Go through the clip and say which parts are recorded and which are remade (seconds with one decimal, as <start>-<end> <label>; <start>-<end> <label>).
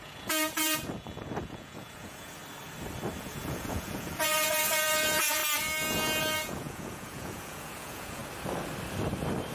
0.0-2.4 remade; 2.4-3.2 recorded; 3.2-5.4 remade; 5.4-6.2 recorded; 6.2-8.2 remade; 8.2-9.5 recorded